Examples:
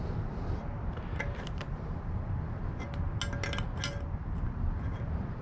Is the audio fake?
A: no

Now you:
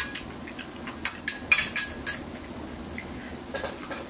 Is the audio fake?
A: no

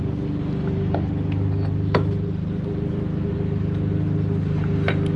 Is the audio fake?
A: no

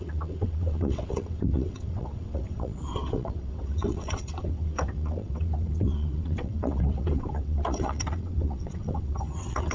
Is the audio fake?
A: yes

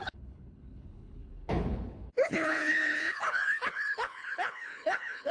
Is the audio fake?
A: yes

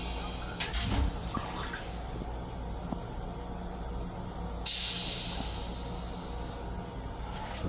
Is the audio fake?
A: no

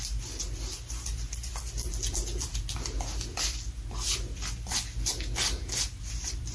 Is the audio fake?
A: no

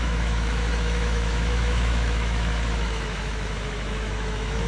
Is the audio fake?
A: yes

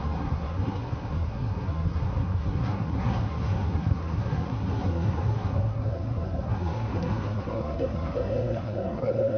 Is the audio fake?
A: yes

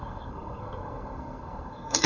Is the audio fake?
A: yes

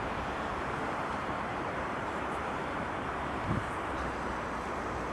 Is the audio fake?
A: yes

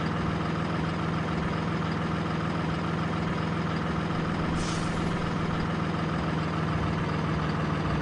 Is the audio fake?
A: no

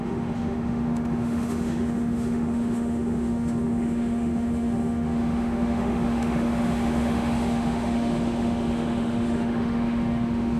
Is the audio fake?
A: yes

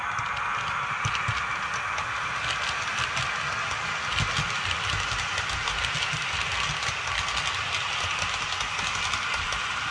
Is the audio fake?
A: no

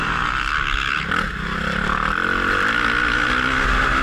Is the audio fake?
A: no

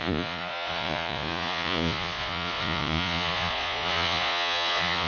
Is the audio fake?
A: yes